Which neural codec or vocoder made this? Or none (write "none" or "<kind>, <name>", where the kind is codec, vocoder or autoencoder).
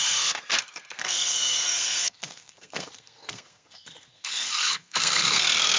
codec, SNAC